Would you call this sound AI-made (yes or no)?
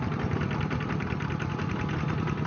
no